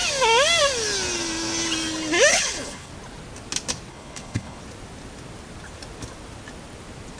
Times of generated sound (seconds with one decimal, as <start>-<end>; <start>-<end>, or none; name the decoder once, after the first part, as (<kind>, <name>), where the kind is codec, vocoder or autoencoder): 2.3-2.9 (codec, HILCodec); 3.9-4.6